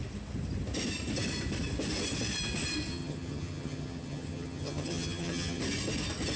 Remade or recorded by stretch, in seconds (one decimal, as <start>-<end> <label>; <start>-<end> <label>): 0.0-2.9 recorded; 2.9-5.6 remade; 5.6-6.4 recorded

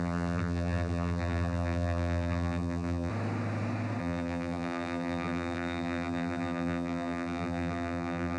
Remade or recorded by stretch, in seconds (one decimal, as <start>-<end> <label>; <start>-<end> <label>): 0.0-3.1 remade; 3.1-4.0 recorded; 4.0-8.4 remade

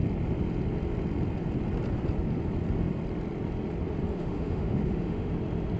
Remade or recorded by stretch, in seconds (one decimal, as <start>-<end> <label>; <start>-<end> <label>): 0.0-4.1 recorded; 4.1-5.3 remade; 5.3-5.8 recorded